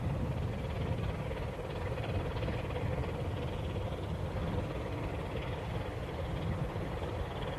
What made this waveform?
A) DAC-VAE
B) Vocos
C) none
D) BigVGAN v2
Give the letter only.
D